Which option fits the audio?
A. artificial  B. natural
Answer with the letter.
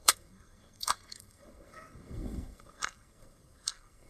A